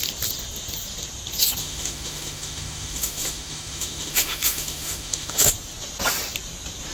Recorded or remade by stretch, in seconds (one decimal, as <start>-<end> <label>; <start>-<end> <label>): 0.0-1.6 recorded; 1.6-5.5 remade; 5.5-6.9 recorded